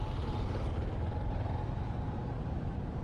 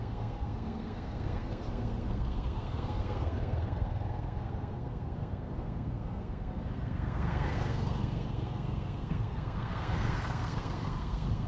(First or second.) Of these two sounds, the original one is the first